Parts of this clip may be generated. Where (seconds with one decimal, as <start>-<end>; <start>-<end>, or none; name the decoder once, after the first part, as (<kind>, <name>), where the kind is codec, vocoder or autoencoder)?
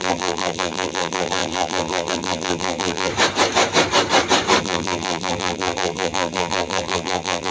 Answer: 0.0-3.1 (vocoder, BigVGAN v2); 4.6-7.5